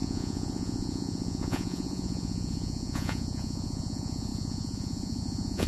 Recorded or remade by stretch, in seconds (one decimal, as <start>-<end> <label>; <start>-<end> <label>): 0.0-5.7 remade